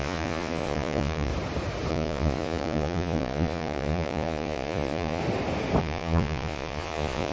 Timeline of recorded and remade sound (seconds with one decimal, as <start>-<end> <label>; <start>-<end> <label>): 0.0-1.3 remade; 1.3-1.9 recorded; 1.9-5.2 remade; 5.2-5.8 recorded; 5.8-7.3 remade

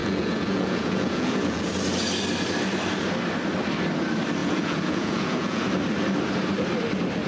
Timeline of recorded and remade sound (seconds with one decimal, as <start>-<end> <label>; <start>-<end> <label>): 0.0-1.7 remade; 1.7-4.4 recorded; 4.4-5.7 remade; 5.7-7.3 recorded